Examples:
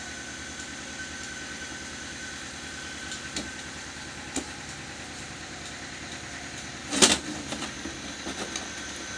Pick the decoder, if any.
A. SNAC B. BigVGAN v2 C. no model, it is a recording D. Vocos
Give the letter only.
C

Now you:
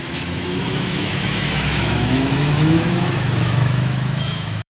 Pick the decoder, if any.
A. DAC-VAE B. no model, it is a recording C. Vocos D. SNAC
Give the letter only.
A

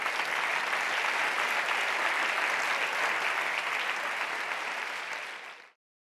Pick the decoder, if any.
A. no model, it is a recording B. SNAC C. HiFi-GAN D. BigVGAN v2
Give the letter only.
A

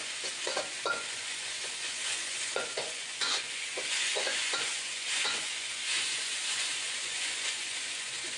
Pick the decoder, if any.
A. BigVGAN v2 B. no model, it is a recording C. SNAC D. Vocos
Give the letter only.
D